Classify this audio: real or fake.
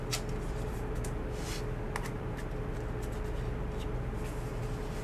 real